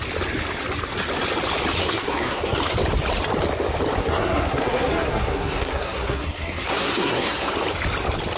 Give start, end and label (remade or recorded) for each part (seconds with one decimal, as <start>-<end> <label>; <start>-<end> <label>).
0.0-1.8 recorded; 1.8-2.6 remade; 2.6-4.0 recorded; 4.0-7.5 remade; 7.5-8.4 recorded